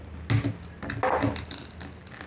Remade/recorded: recorded